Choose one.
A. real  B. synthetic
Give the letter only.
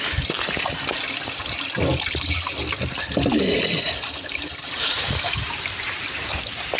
A